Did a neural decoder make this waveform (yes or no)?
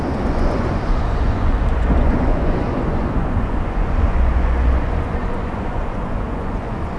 yes